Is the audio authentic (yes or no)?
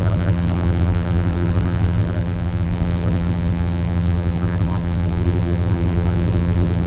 no